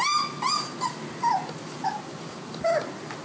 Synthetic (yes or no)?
no